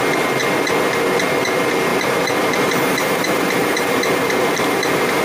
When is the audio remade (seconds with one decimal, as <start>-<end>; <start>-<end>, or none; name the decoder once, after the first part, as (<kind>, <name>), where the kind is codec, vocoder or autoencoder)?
1.9-5.2 (vocoder, BigVGAN v2)

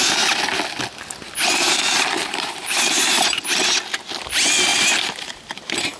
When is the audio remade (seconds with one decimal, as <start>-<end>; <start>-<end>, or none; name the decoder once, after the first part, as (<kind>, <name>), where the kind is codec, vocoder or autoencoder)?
2.2-3.6 (vocoder, BigVGAN v2); 4.7-6.0

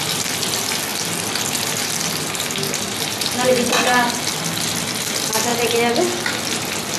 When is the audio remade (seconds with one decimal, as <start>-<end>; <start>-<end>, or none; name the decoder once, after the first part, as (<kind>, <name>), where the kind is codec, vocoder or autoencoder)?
none